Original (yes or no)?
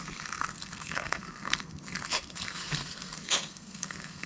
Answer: no